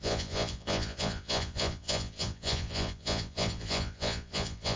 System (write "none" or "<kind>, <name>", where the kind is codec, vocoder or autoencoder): vocoder, Vocos